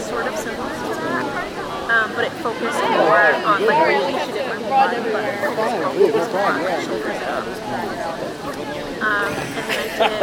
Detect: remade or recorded recorded